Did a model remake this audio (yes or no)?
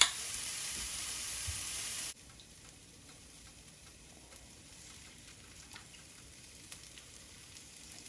yes